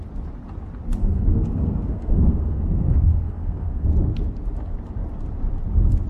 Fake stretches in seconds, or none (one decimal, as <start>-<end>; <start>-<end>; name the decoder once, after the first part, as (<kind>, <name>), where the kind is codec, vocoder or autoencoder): 1.0-3.9 (codec, SNAC)